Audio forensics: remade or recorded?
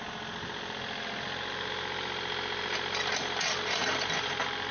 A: recorded